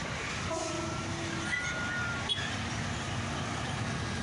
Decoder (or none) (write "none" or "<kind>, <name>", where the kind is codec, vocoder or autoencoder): none